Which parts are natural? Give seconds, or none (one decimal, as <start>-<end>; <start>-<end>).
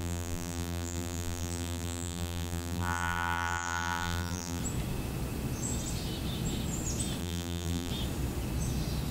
4.6-7.2; 7.9-9.1